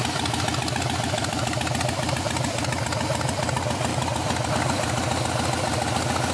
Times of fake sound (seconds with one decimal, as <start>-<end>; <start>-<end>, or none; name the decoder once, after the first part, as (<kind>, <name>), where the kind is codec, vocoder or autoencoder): none